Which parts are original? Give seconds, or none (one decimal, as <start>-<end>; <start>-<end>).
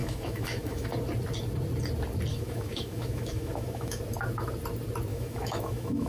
0.9-2.3; 4.0-5.1